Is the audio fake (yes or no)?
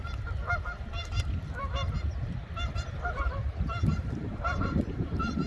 yes